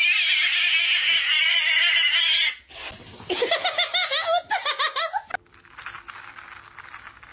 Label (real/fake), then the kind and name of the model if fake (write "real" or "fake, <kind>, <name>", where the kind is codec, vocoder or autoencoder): real